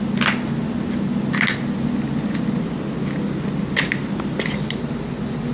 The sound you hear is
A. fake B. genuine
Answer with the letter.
B